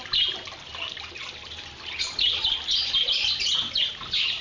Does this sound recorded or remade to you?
recorded